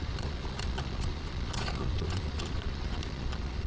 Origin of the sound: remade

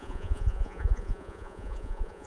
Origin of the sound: remade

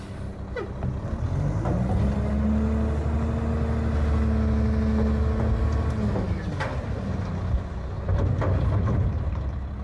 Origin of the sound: recorded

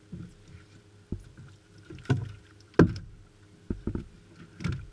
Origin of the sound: recorded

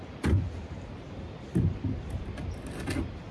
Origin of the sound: recorded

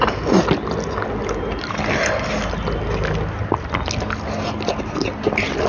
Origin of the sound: recorded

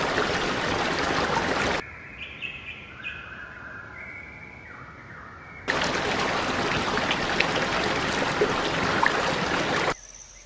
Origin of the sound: recorded